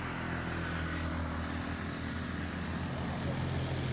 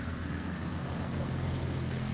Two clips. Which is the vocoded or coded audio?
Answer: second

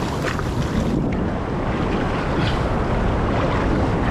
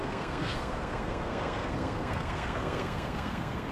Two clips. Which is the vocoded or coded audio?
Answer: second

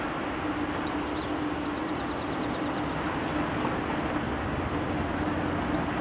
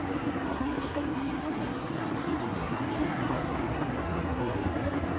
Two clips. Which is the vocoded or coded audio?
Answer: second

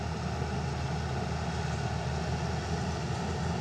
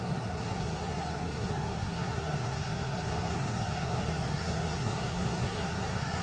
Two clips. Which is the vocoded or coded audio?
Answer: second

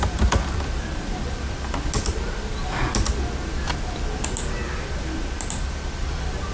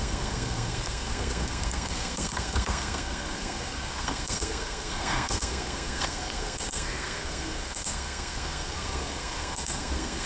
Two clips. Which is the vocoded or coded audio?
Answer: second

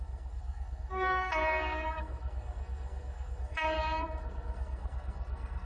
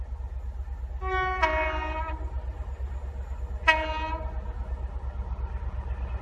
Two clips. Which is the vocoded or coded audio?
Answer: first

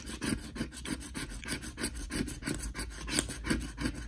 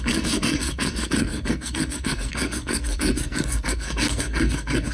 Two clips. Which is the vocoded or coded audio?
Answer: second